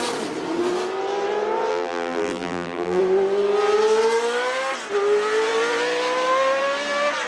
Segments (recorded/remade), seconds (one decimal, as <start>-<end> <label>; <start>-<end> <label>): 0.0-1.7 recorded; 1.7-3.0 remade; 3.0-7.3 recorded